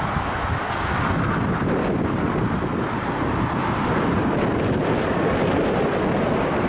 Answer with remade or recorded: recorded